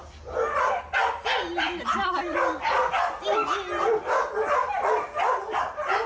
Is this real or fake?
real